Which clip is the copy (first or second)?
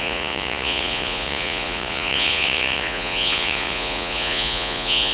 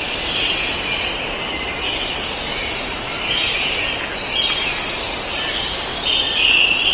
first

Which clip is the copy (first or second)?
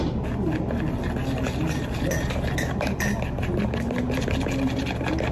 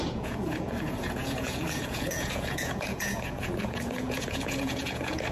second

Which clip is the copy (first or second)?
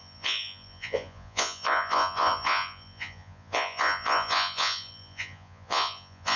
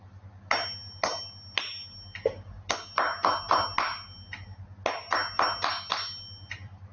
first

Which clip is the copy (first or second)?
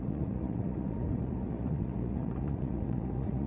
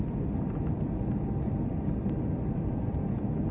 first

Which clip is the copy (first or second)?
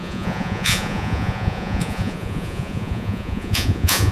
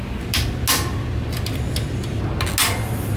first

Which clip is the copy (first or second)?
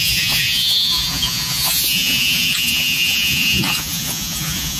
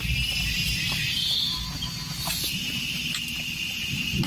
first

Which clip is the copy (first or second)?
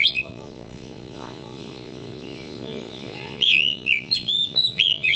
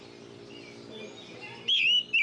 first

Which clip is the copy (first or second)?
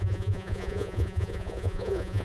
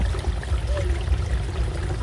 first